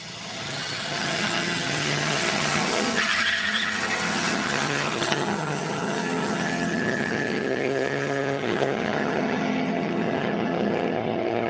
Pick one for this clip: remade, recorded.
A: remade